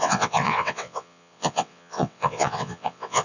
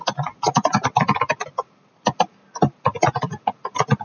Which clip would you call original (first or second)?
second